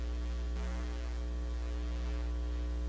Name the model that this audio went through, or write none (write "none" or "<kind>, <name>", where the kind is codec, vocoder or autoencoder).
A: none